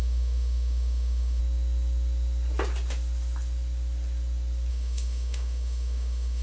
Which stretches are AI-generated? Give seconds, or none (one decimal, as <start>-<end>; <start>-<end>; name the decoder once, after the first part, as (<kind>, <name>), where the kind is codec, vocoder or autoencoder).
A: 0.0-1.4 (autoencoder, DAC-VAE); 4.7-6.4